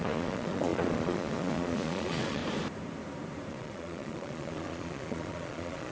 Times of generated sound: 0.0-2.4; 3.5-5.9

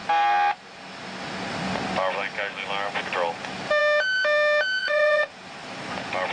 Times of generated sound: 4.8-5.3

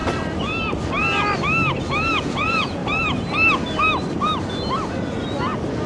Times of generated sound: 2.2-2.8

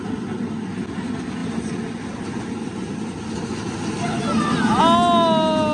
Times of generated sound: none

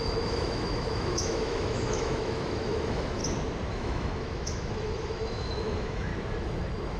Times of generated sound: 0.0-3.2; 3.7-6.1

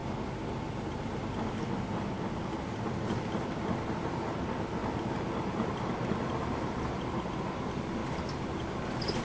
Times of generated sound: none